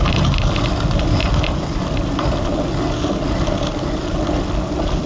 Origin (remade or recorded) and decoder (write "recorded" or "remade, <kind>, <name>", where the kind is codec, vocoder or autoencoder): recorded